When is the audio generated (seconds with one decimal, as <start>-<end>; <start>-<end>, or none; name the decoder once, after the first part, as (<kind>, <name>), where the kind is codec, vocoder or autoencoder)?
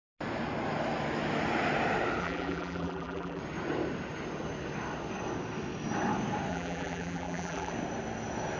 2.2-3.4 (vocoder, BigVGAN v2); 6.5-7.7